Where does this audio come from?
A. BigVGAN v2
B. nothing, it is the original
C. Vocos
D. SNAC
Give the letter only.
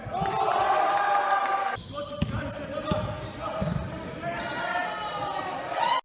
B